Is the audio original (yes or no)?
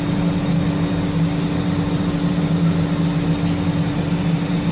yes